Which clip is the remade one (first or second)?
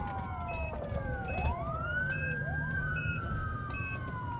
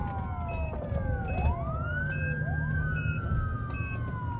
first